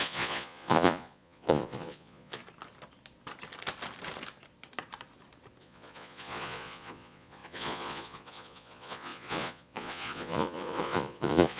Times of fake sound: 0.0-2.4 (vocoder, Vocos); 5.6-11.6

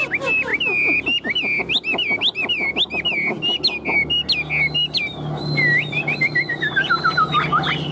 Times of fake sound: none

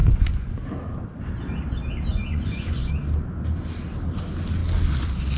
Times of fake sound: 0.0-0.5 (vocoder, Vocos); 2.1-2.9

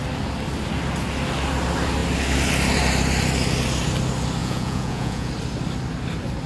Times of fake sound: 4.4-5.3 (vocoder, Vocos)

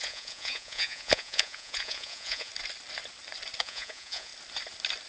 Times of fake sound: 0.0-2.5 (vocoder, Vocos); 3.6-4.3

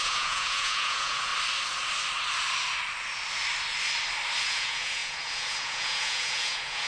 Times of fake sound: 0.0-1.3 (vocoder, Vocos); 4.4-6.9

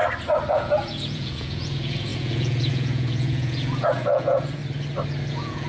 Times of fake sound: 0.5-4.6 (vocoder, Vocos); 5.3-5.7